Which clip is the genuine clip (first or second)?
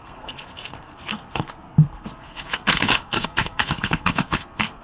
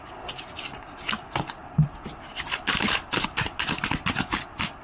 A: second